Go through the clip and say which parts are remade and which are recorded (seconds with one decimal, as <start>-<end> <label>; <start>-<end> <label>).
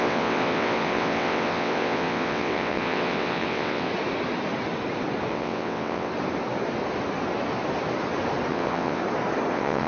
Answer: 0.0-3.9 remade; 3.9-5.3 recorded; 5.3-6.1 remade; 6.1-8.5 recorded; 8.5-9.0 remade; 9.0-9.5 recorded; 9.5-9.9 remade